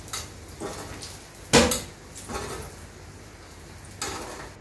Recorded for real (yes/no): yes